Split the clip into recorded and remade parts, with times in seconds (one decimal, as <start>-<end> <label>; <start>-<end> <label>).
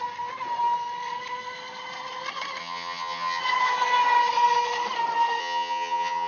0.0-2.6 recorded; 2.6-3.4 remade; 3.4-5.4 recorded; 5.4-6.3 remade